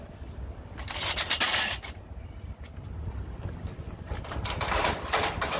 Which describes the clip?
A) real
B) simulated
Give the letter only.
A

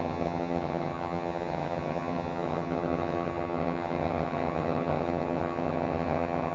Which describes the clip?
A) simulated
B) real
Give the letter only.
A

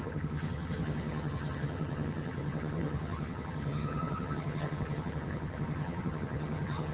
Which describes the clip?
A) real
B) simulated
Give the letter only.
B